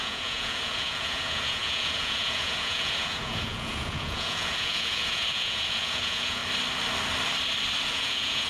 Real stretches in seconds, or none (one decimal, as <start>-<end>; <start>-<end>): 6.4-7.9